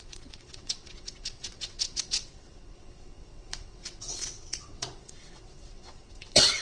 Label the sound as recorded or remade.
remade